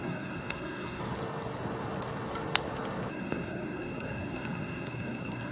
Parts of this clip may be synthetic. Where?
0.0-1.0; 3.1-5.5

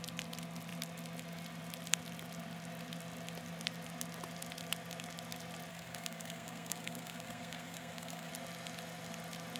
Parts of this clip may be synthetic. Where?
5.7-8.3

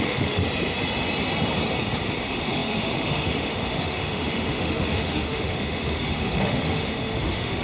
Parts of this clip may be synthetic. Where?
0.0-0.4; 2.2-7.6

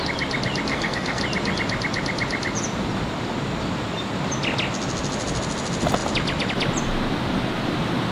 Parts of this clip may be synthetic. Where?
0.7-1.2